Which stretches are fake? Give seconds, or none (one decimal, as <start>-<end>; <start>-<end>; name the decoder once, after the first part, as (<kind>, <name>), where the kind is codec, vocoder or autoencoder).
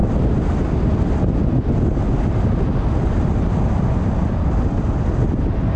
none